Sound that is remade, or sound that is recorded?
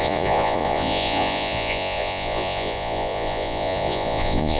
remade